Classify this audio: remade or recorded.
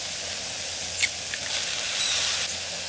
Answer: recorded